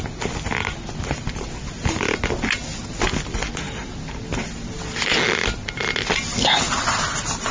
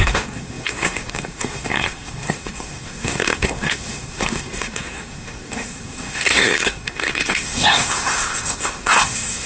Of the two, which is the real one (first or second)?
first